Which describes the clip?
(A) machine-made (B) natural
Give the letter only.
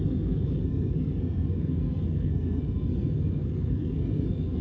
A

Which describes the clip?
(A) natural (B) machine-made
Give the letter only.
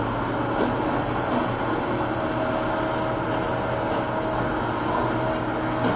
A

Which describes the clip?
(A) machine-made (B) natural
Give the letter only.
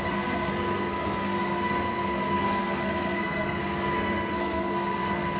A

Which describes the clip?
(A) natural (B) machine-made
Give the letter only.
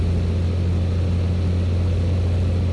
A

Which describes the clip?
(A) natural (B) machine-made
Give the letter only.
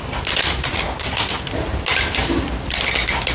B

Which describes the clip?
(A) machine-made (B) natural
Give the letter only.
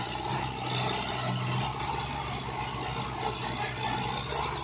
B